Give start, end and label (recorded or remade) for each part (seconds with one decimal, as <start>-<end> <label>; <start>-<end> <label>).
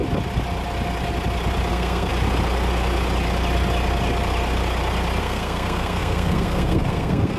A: 0.0-1.7 recorded; 1.7-2.1 remade; 2.1-5.2 recorded; 5.2-7.4 remade